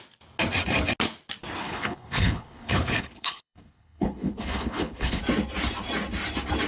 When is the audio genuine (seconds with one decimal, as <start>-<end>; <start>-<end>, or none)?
0.0-1.6; 5.2-6.7